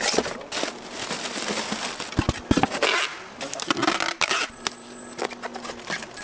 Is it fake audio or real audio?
real